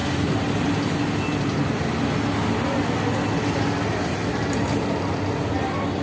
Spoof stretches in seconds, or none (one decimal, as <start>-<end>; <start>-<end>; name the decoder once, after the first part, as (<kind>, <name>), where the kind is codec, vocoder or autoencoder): none

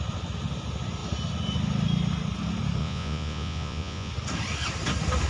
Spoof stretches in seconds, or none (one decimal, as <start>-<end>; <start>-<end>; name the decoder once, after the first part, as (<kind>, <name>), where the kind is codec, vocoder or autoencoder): 2.8-4.1 (vocoder, Vocos)

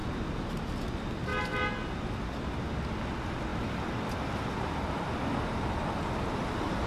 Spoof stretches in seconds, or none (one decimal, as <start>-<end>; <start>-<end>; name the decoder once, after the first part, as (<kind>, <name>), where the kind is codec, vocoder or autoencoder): none

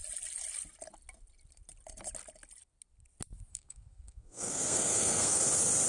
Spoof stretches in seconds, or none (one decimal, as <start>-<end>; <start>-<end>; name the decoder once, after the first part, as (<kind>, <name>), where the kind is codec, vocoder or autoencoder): 3.5-5.4 (codec, SNAC)

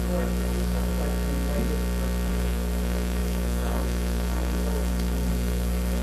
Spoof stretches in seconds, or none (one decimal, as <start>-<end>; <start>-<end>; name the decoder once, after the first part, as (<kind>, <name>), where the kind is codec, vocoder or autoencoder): 0.0-0.9 (codec, SNAC); 2.3-6.0

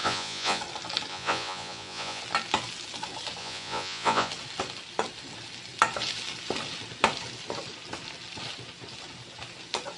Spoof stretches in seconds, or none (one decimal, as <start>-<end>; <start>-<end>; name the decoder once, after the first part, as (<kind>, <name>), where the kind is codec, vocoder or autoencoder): 0.0-0.6 (vocoder, Vocos); 1.1-2.2; 3.4-4.3

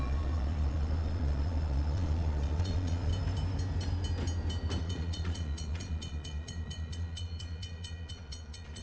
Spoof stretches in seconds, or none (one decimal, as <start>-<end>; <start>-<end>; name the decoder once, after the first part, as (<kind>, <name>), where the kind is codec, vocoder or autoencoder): 0.0-3.1 (vocoder, Vocos); 4.8-8.8

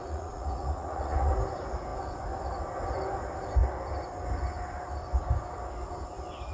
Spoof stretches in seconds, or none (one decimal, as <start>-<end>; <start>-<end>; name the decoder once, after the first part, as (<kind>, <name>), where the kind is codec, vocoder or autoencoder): 0.0-1.3 (vocoder, Vocos)